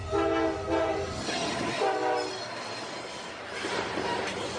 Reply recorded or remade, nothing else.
recorded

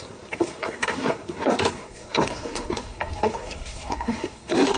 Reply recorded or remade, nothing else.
remade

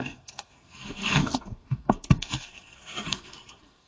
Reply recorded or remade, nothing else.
remade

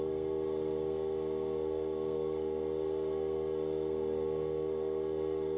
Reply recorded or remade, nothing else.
remade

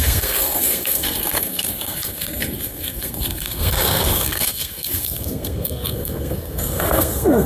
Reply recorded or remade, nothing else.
remade